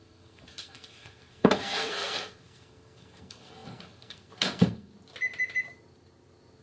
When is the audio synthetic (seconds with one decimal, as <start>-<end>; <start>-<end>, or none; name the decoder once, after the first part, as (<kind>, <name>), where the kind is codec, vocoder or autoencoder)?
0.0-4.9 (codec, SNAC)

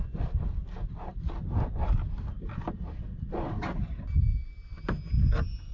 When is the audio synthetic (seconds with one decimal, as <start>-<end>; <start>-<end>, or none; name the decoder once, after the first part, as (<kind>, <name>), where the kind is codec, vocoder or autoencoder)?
none

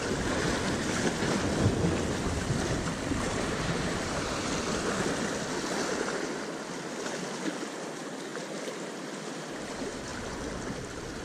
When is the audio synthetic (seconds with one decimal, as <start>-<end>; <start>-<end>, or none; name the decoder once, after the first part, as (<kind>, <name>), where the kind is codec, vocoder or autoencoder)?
3.3-4.5 (vocoder, BigVGAN v2)